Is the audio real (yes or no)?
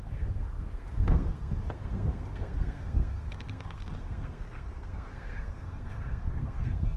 no